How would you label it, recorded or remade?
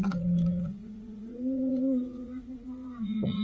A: remade